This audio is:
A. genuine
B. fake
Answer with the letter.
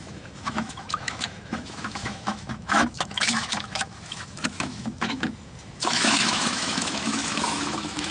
B